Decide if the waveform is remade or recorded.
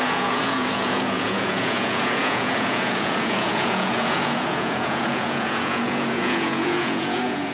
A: remade